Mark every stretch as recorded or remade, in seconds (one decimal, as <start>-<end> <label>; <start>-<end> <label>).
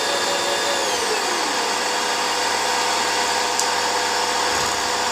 0.0-5.1 recorded